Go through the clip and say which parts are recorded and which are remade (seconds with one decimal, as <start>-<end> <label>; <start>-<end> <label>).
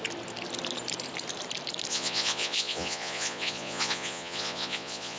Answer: 0.0-1.9 recorded; 1.9-5.2 remade